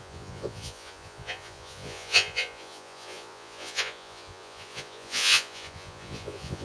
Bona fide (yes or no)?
no